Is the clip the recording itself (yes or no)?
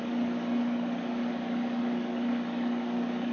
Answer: no